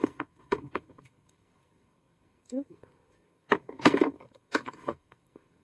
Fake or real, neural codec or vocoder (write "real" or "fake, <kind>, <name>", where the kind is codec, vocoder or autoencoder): fake, codec, SNAC